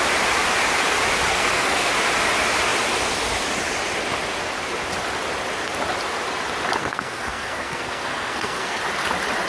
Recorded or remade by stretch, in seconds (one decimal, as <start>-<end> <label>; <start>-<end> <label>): 0.0-1.3 recorded; 1.3-1.9 remade; 1.9-6.8 recorded; 6.8-8.8 remade; 8.8-9.5 recorded

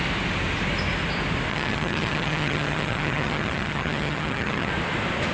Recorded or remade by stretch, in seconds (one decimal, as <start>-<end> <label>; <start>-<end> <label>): 0.0-1.5 recorded; 1.5-4.7 remade; 4.7-5.3 recorded

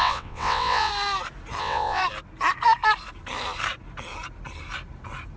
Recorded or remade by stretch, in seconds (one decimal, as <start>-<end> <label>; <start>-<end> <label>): 0.0-0.9 remade; 0.9-1.6 recorded; 1.6-2.0 remade; 2.0-5.4 recorded